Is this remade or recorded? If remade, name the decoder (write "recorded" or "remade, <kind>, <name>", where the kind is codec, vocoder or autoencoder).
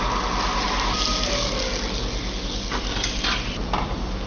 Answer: recorded